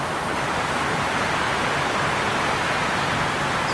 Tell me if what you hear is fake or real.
real